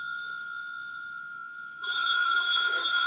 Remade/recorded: remade